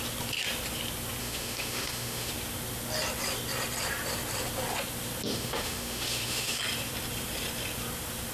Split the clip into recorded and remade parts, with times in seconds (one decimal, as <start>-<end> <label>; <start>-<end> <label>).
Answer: 0.0-1.2 recorded; 1.2-2.3 remade; 2.3-5.3 recorded; 5.3-6.6 remade; 6.6-8.3 recorded